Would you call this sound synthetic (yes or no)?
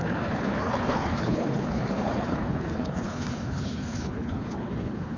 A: yes